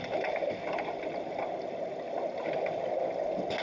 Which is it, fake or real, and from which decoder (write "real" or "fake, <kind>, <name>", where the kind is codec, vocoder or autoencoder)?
real